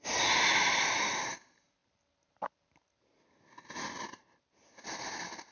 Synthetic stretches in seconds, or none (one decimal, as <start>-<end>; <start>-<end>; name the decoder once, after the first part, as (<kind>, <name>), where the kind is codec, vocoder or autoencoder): none